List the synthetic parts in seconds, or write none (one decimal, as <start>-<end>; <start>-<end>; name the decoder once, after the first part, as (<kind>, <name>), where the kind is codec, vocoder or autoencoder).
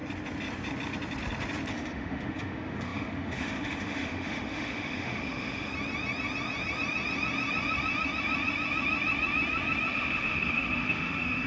1.7-5.7 (autoencoder, DAC-VAE); 9.9-11.5